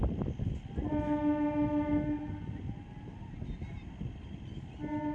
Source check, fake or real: real